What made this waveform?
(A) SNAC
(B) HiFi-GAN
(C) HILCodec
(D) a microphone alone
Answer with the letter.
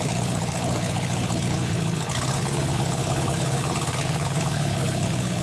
C